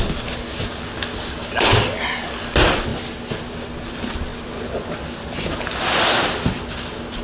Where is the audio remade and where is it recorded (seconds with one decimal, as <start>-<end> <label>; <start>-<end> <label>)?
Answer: 0.0-7.2 recorded